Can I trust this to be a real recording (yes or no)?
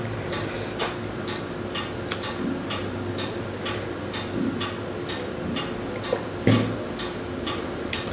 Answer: yes